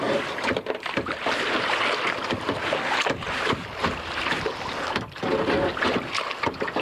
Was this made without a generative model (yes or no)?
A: yes